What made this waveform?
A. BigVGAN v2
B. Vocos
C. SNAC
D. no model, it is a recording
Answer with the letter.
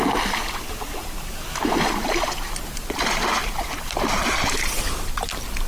D